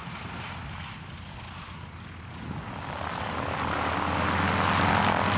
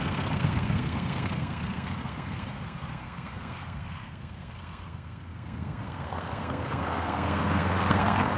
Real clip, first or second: first